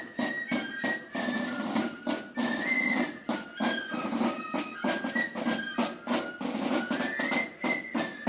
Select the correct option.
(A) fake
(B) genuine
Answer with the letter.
B